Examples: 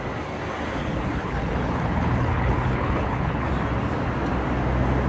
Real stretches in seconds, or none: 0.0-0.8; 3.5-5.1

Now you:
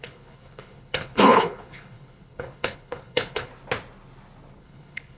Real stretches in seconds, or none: 3.5-4.6

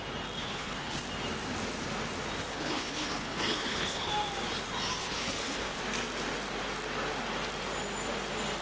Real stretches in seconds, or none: 0.0-0.4; 1.0-2.5; 4.1-5.0; 5.8-8.6